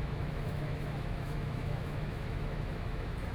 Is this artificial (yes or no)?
yes